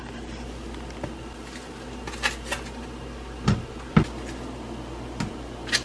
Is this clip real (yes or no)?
yes